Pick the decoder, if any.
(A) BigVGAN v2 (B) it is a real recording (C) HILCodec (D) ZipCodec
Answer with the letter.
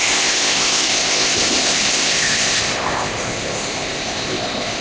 D